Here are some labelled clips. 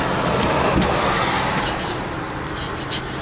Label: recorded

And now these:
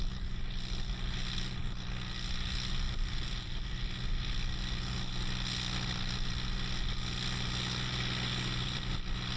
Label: recorded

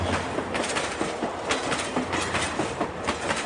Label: recorded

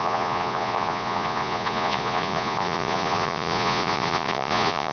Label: remade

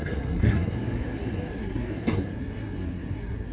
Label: remade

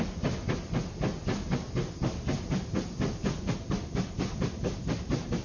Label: recorded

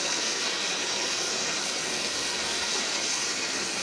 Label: remade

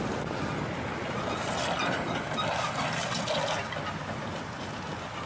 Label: recorded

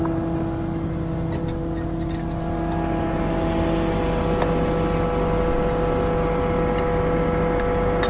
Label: recorded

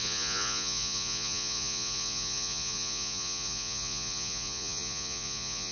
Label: remade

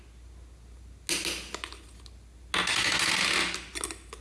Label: recorded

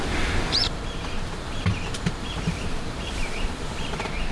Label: remade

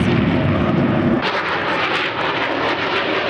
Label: recorded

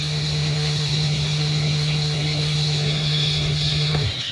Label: remade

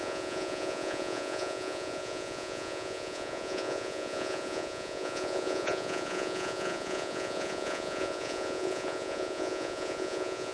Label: remade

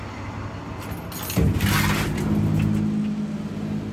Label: recorded